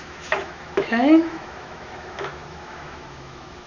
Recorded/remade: remade